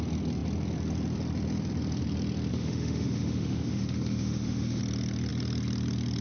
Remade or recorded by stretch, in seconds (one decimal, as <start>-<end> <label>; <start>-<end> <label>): 0.0-2.5 recorded; 2.5-4.8 remade; 4.8-6.2 recorded